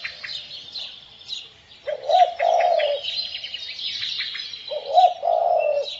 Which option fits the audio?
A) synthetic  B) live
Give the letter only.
B